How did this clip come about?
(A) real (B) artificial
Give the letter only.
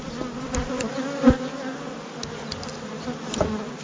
A